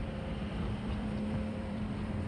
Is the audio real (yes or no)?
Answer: no